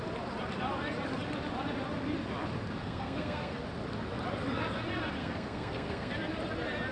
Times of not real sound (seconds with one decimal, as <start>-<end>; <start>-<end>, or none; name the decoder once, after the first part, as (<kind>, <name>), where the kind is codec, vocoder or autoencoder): 2.8-3.6 (codec, SNAC); 5.2-6.1